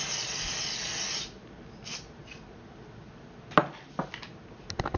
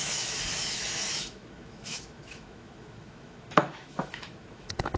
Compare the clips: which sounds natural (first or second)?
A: first